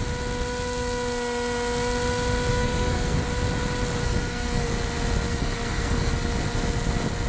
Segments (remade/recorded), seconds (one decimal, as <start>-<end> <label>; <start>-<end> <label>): 0.0-2.5 recorded; 2.5-3.2 remade; 3.2-4.0 recorded; 4.0-4.7 remade; 4.7-5.3 recorded; 5.3-6.1 remade; 6.1-7.3 recorded